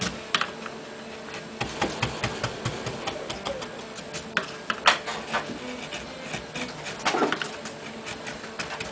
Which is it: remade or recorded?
recorded